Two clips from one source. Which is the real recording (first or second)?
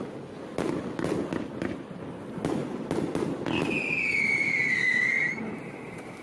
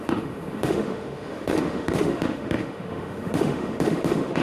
first